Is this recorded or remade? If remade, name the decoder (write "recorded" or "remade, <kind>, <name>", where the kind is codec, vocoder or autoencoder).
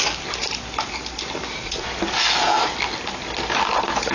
recorded